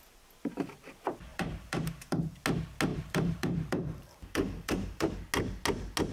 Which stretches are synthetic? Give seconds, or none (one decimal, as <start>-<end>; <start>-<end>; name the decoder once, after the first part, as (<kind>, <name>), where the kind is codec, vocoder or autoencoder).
1.3-2.4 (vocoder, BigVGAN v2); 2.9-5.1